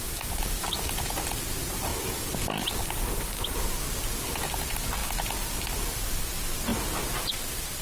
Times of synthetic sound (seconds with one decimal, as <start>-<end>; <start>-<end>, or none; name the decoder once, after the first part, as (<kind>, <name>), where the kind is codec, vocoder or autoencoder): none